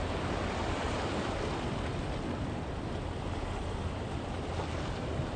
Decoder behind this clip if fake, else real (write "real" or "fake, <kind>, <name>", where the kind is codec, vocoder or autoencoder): real